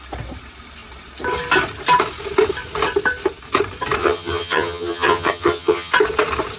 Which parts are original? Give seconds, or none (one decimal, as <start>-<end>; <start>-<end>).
0.0-4.0; 5.9-6.6